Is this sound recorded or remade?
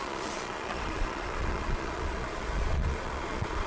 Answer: remade